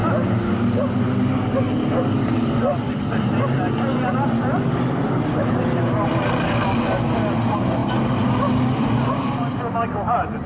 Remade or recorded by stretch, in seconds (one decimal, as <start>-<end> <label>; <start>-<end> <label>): 0.0-10.5 recorded